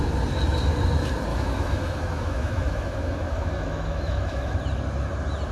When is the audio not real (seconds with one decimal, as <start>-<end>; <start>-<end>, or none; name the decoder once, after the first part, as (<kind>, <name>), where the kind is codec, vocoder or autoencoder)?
1.3-4.6 (autoencoder, DAC-VAE)